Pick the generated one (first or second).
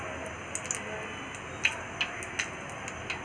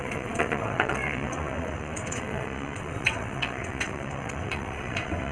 second